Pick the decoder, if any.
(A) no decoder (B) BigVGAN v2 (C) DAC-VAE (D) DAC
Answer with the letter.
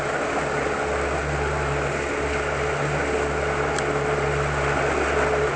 A